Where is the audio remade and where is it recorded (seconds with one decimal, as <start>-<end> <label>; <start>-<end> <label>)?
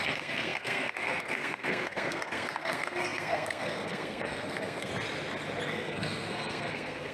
0.0-4.9 remade; 4.9-5.7 recorded; 5.7-7.1 remade